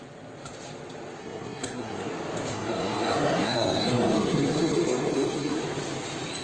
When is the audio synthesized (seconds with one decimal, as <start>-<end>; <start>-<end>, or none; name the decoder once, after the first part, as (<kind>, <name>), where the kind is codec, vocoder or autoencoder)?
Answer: 1.2-2.1 (codec, SNAC); 2.5-5.6